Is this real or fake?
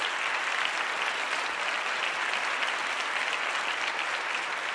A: real